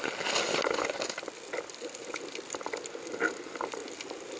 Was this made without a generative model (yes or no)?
yes